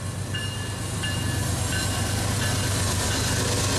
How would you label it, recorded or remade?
recorded